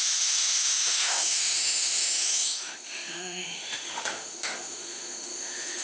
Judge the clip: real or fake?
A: fake